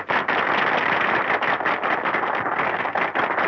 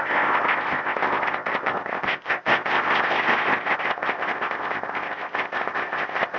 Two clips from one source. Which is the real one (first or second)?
first